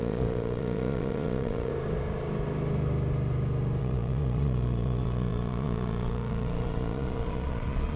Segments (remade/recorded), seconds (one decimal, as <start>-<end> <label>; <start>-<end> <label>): 0.0-1.7 remade; 1.7-3.8 recorded; 3.8-8.0 remade